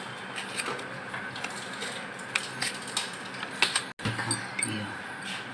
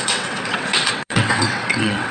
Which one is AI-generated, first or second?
second